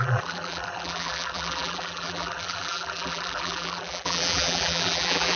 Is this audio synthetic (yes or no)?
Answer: yes